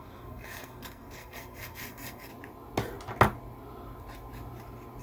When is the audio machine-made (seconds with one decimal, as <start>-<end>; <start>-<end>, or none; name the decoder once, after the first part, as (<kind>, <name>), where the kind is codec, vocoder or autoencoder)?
0.0-2.3 (codec, SNAC)